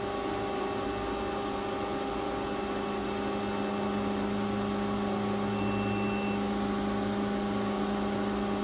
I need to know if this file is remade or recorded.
recorded